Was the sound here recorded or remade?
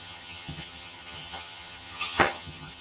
remade